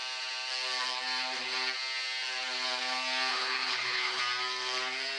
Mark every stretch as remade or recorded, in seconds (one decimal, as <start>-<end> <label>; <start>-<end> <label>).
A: 0.0-3.3 recorded; 3.3-4.2 remade; 4.2-5.2 recorded